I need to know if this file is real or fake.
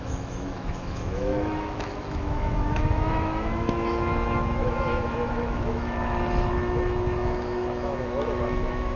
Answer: fake